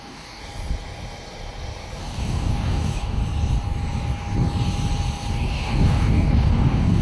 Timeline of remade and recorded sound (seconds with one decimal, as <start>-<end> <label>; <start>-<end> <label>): 0.0-0.4 remade; 0.4-2.0 recorded; 2.0-3.2 remade; 3.2-5.3 recorded; 5.3-7.0 remade